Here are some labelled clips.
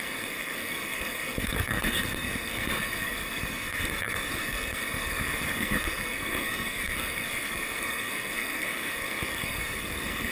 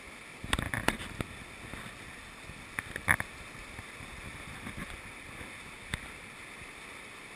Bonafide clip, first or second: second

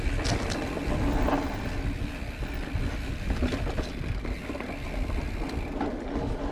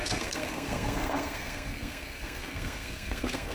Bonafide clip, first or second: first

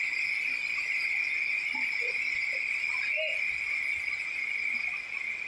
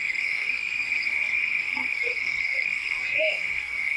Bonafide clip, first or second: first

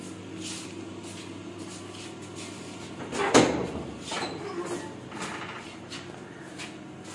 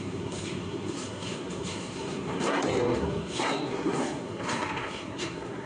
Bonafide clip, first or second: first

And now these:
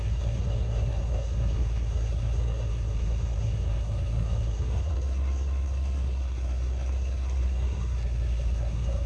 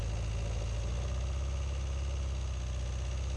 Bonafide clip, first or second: second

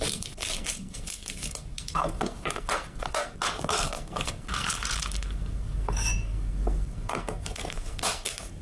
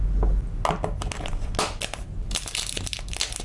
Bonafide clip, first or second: second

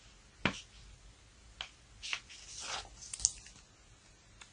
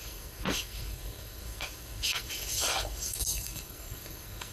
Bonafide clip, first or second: first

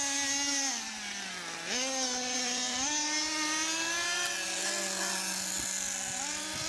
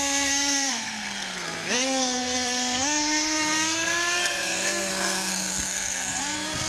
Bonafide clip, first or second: first